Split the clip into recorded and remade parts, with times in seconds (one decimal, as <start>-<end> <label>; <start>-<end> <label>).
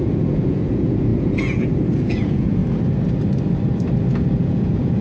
0.0-2.6 remade; 2.6-4.4 recorded; 4.4-5.0 remade